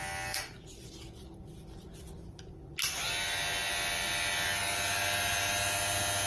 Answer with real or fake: real